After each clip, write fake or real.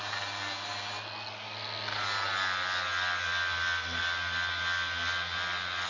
real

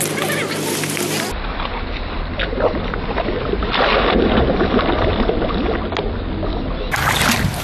real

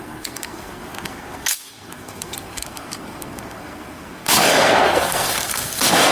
fake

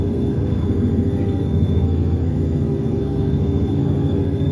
fake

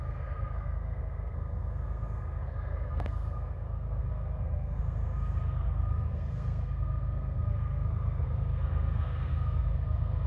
fake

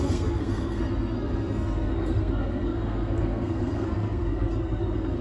fake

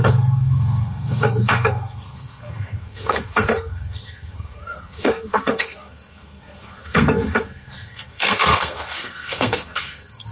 fake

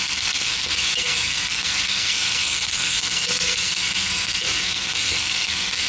fake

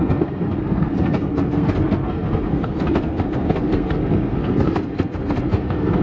fake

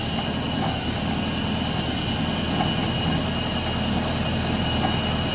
real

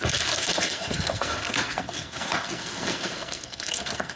fake